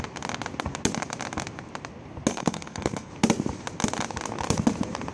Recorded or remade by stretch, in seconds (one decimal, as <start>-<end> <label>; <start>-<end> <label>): 0.0-2.3 recorded; 2.3-3.1 remade; 3.1-5.1 recorded

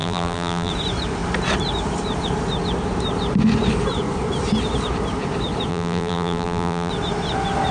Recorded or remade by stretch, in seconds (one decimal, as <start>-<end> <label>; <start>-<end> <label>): 0.0-0.7 remade; 0.7-5.7 recorded; 5.7-6.9 remade; 6.9-7.7 recorded

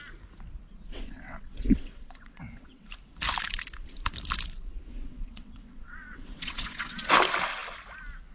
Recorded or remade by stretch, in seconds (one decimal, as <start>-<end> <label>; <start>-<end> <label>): 0.0-0.9 recorded; 0.9-2.9 remade; 2.9-4.9 recorded; 4.9-7.1 remade; 7.1-8.3 recorded